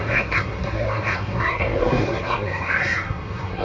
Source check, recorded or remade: remade